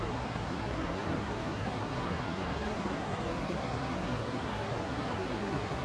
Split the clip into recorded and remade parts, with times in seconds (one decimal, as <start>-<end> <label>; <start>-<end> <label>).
0.0-5.8 remade